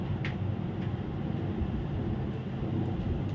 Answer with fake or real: real